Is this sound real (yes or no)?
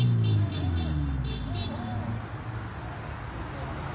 yes